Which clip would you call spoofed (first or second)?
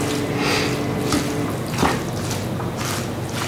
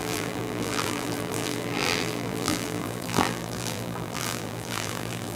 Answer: second